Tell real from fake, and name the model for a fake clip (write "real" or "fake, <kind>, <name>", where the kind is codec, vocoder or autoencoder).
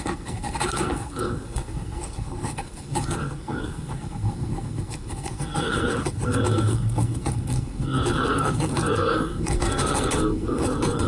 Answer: fake, codec, SNAC